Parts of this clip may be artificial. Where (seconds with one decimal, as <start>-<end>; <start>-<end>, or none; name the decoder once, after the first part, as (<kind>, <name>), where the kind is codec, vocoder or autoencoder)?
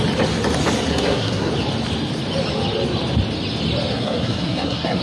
0.9-1.5 (codec, SNAC); 3.9-5.0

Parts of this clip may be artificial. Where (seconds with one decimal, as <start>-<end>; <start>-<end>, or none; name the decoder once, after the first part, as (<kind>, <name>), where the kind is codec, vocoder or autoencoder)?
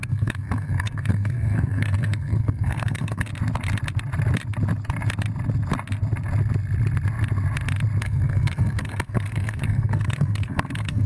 0.0-3.3 (codec, SNAC); 8.0-11.1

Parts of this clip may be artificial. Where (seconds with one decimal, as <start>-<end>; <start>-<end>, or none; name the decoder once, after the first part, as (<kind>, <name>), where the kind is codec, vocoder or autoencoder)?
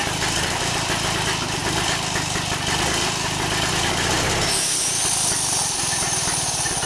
none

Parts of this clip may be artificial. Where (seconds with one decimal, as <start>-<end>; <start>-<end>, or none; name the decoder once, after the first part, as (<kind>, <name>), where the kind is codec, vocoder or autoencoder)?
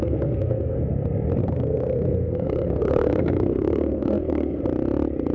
0.0-0.8 (codec, SNAC); 1.4-4.6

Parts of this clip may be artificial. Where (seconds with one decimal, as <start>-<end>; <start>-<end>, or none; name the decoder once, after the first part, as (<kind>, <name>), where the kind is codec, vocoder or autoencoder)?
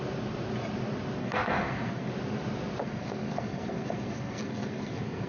1.2-2.1 (codec, SNAC); 2.8-5.3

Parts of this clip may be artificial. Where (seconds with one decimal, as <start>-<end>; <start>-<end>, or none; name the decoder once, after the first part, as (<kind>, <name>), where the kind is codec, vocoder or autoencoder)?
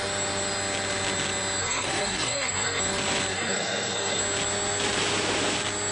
1.6-2.8 (codec, SNAC); 3.3-4.2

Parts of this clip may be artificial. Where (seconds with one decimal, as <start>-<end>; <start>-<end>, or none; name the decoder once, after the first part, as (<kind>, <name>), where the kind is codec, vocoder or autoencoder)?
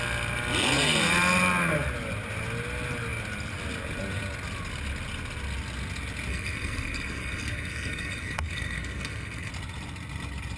6.3-9.5 (codec, SNAC)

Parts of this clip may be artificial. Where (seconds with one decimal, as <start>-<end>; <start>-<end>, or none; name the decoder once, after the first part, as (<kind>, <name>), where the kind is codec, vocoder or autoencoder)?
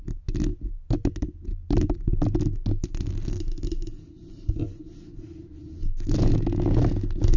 none